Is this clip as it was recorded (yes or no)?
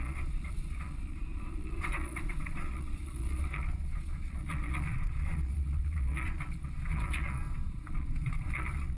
no